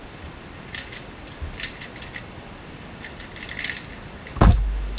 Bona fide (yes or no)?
yes